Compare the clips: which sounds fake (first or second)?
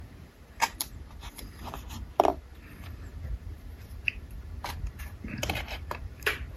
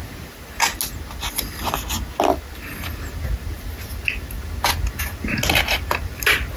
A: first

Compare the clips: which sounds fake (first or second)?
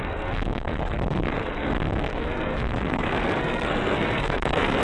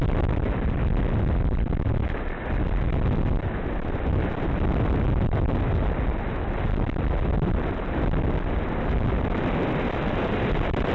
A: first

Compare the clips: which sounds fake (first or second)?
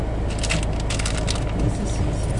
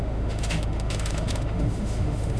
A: second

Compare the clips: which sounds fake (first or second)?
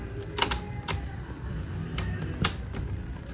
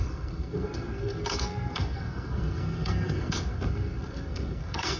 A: second